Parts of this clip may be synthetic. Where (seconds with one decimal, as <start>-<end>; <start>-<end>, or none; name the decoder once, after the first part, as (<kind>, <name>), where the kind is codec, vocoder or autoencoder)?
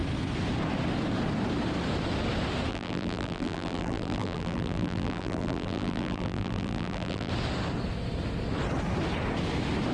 2.7-7.3 (vocoder, BigVGAN v2)